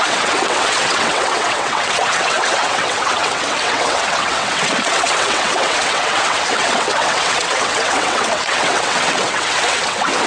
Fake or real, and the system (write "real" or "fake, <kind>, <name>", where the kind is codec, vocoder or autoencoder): fake, vocoder, WaveNeXt